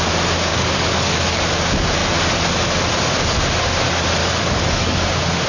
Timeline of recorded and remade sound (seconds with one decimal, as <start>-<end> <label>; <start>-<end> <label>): 0.0-0.5 recorded; 0.5-1.4 remade; 1.4-4.2 recorded; 4.2-5.0 remade; 5.0-5.5 recorded